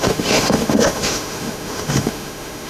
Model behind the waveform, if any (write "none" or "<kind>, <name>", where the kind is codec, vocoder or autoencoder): autoencoder, DAC-VAE